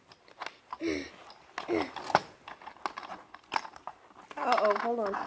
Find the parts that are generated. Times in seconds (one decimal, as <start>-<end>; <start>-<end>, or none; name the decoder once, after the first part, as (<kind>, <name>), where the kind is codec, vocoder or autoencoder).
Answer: none